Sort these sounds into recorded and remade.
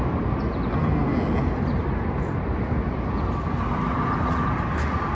recorded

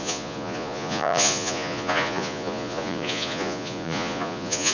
remade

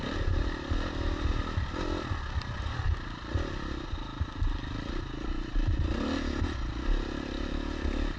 recorded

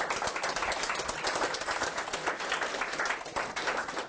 recorded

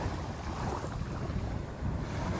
recorded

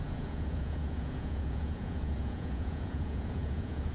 remade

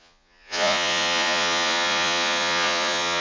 remade